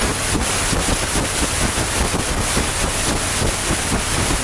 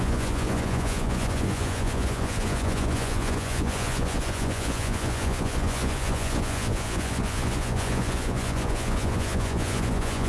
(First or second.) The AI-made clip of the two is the second